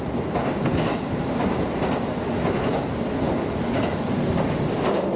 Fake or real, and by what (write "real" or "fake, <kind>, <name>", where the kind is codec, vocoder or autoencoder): real